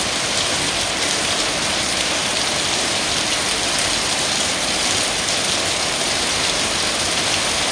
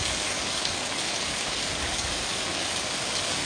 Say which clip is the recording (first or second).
first